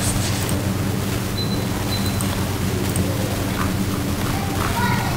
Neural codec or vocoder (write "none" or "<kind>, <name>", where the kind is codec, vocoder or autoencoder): none